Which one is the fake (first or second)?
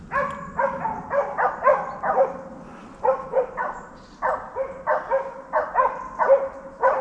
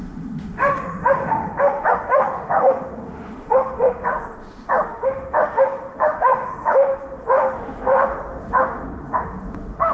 second